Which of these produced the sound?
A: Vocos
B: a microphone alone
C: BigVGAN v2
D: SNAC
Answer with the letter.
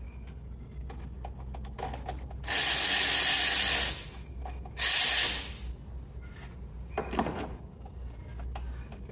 B